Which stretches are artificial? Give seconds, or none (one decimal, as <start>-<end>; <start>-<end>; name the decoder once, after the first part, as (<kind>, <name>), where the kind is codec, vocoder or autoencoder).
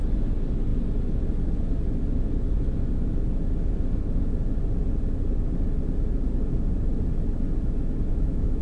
8.1-8.6 (autoencoder, DAC-VAE)